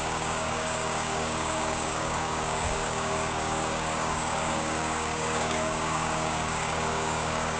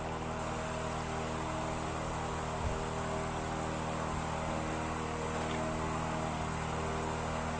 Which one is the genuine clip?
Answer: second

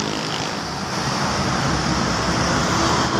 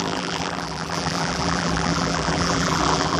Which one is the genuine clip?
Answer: first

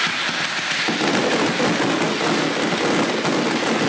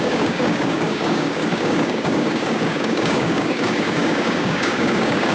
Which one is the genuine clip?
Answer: first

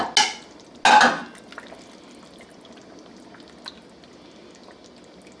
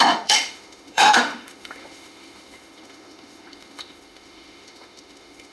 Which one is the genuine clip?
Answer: first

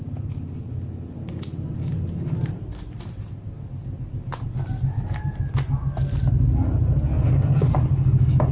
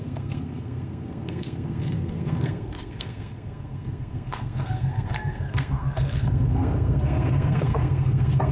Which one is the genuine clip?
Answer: first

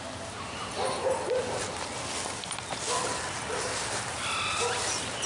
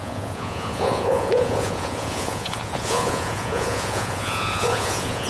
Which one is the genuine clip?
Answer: first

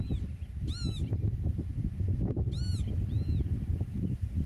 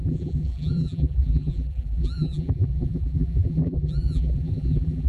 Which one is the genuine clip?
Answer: first